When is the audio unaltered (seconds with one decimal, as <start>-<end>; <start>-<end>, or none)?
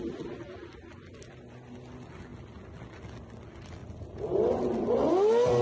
0.0-5.6